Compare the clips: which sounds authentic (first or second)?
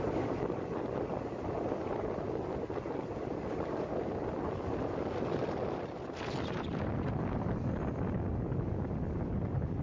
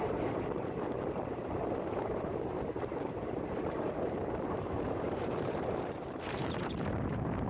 first